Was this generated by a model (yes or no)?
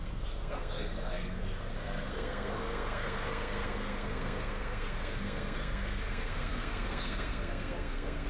yes